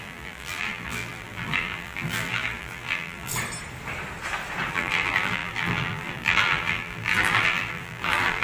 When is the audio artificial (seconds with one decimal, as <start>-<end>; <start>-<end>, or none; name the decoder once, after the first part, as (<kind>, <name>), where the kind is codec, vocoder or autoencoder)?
0.0-3.3 (vocoder, BigVGAN v2); 4.7-8.4